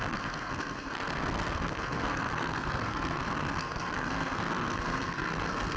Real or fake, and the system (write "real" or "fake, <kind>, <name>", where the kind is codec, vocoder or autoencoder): fake, codec, SNAC